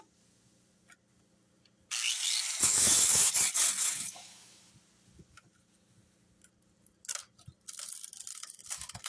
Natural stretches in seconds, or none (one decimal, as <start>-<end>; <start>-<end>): 0.0-2.6; 3.3-3.8; 4.7-8.3